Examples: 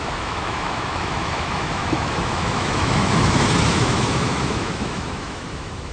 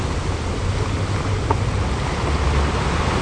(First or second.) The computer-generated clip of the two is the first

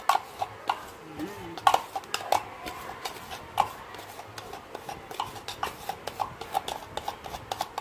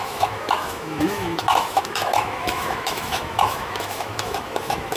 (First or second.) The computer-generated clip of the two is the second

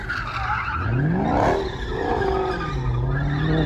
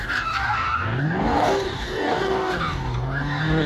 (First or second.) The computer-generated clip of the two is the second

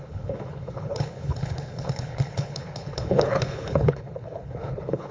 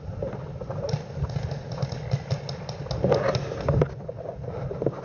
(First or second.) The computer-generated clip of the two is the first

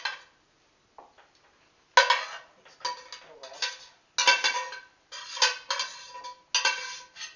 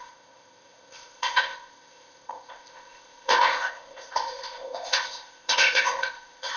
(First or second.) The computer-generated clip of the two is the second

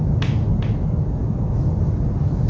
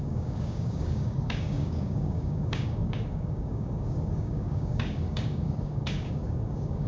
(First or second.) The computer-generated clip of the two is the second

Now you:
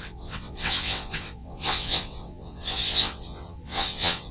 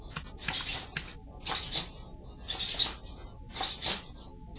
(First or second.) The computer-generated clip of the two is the first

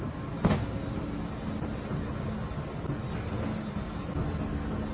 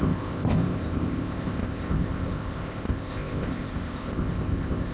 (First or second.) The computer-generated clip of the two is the second